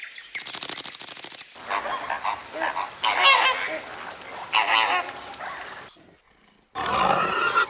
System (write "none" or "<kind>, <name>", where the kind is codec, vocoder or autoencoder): none